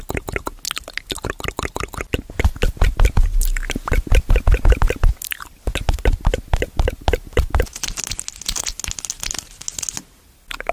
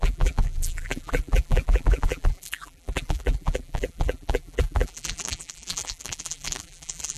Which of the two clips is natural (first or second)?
first